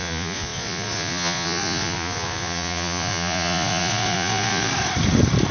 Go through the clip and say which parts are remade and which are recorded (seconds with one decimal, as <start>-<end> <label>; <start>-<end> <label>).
0.0-4.7 remade; 4.7-5.5 recorded